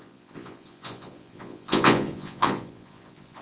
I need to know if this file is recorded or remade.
remade